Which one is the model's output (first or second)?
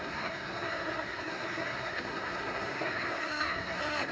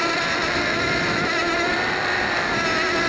first